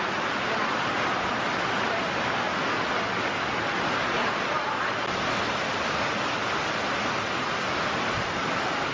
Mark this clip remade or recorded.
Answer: recorded